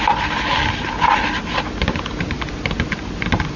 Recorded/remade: recorded